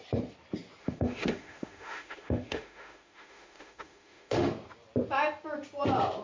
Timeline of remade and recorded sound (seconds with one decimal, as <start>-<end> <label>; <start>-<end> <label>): 0.0-0.8 recorded; 0.8-4.5 remade; 4.5-6.2 recorded